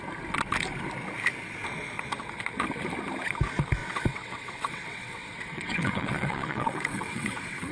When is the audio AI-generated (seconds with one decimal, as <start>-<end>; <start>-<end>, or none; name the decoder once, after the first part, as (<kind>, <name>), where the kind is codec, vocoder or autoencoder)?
3.8-7.7 (vocoder, WaveNeXt)